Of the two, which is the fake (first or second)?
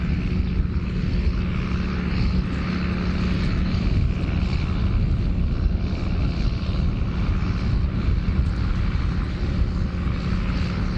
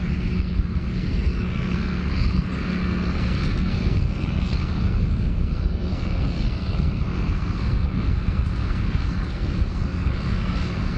second